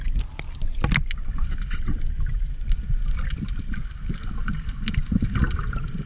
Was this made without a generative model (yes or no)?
yes